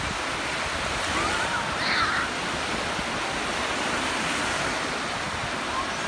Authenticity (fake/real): real